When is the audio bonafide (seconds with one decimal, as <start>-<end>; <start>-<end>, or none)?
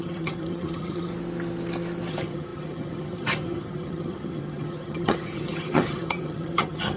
1.1-2.1